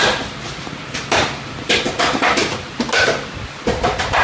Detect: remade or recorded recorded